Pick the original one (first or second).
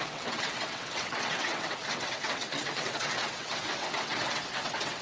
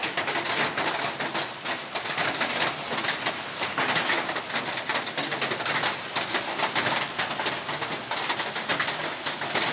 second